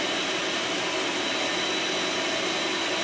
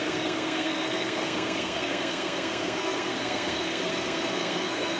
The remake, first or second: second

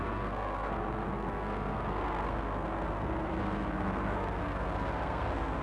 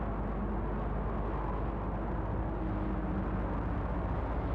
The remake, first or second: first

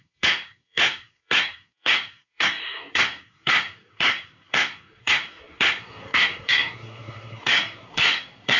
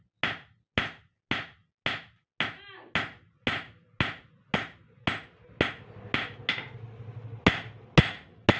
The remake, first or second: first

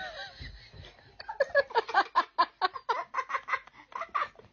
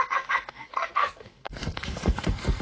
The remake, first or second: second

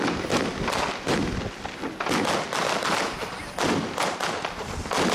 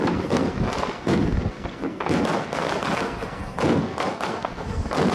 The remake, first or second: second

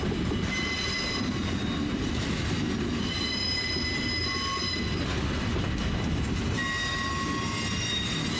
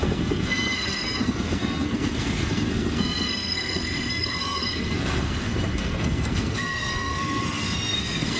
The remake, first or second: second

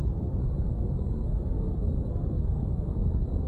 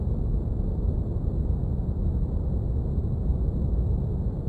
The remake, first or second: first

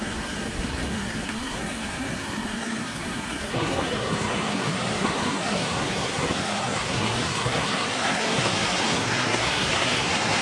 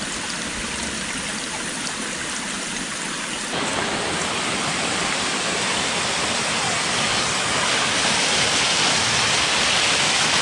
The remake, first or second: first